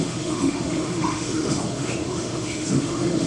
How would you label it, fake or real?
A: fake